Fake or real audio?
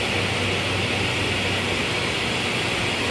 real